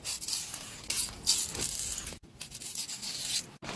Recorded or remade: recorded